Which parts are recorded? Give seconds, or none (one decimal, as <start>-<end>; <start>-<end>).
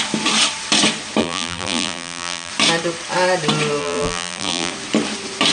0.0-1.2; 2.5-3.8; 4.7-5.5